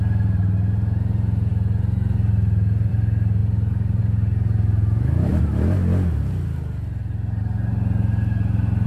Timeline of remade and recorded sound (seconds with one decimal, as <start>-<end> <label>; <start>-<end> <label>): 0.0-8.9 recorded